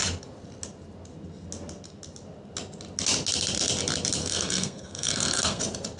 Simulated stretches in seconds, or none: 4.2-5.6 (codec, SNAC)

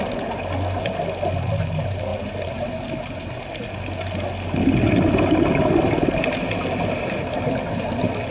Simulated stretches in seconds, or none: none

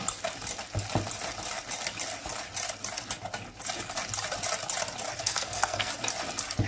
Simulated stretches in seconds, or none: 5.2-5.9 (codec, SNAC)

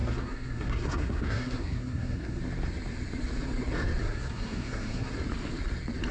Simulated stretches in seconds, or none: 0.0-2.4 (codec, SNAC); 4.0-5.1